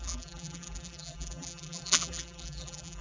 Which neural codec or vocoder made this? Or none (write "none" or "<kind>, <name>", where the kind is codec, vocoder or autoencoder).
vocoder, BigVGAN v2